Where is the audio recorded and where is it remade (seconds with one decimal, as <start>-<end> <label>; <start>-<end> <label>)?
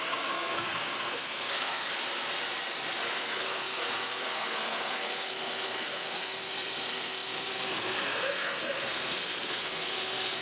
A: 0.0-1.9 remade; 1.9-3.1 recorded; 3.1-10.4 remade